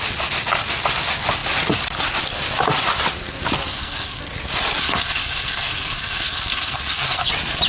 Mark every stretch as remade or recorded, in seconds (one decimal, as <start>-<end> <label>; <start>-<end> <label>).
0.0-3.7 recorded; 3.7-4.2 remade; 4.2-4.8 recorded; 4.8-7.3 remade; 7.3-7.7 recorded